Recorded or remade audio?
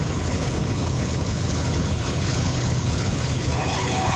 remade